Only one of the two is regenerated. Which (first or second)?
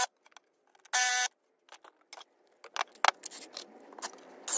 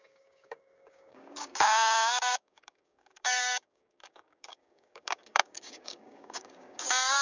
second